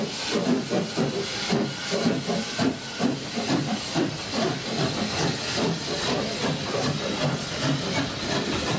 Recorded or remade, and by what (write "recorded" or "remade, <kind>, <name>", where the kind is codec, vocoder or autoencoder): recorded